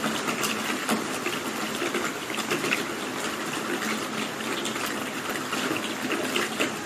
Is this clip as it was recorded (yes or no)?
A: yes